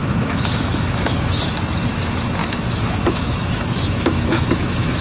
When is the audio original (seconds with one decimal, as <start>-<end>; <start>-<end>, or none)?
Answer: 1.5-2.4